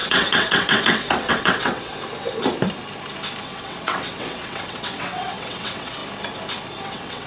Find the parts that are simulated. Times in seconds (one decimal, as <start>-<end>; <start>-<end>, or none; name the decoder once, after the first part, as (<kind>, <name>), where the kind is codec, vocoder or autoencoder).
0.0-1.9 (vocoder, WaveNeXt); 3.4-6.0; 6.8-7.3